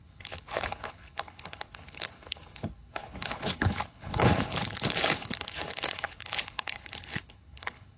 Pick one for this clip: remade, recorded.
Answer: remade